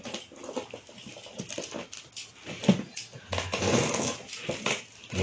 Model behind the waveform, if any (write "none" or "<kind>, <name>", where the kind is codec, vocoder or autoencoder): none